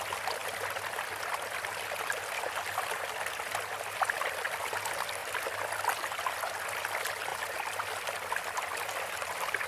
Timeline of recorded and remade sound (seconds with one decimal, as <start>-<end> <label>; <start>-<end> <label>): 0.0-9.7 recorded